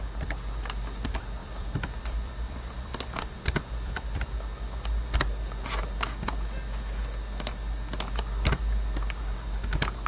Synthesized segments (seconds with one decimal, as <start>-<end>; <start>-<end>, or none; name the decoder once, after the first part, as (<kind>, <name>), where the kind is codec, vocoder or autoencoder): 1.4-3.9 (vocoder, BigVGAN v2)